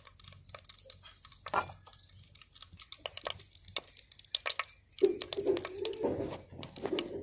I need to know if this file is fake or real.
real